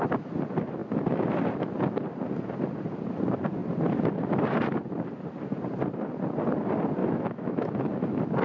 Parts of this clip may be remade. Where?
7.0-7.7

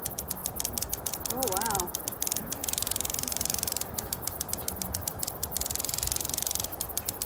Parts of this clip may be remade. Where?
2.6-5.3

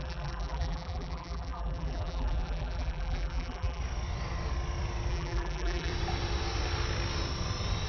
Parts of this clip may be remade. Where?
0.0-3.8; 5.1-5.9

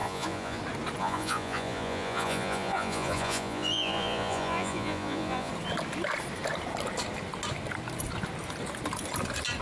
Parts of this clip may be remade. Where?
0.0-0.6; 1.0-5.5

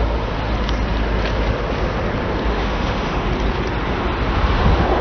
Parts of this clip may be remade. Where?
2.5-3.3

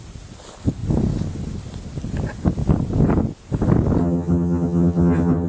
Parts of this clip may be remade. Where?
4.0-5.5